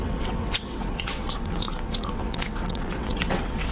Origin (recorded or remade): remade